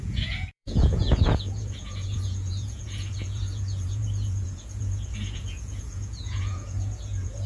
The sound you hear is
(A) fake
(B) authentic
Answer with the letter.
A